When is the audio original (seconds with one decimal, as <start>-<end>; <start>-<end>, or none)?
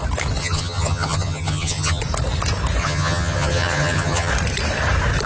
0.0-0.4; 2.0-2.8; 4.3-5.3